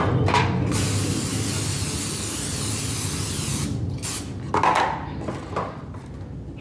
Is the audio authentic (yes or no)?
yes